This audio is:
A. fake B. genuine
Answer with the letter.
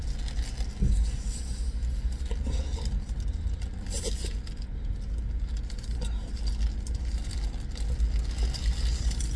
B